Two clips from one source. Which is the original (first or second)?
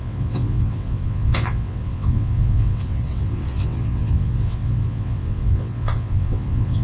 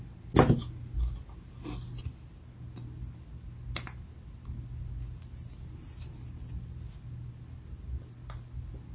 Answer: second